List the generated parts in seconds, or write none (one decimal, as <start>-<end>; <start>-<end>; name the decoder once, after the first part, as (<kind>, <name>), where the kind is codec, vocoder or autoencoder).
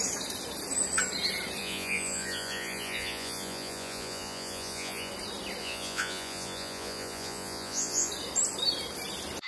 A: 1.6-5.1 (vocoder, Vocos); 5.6-8.1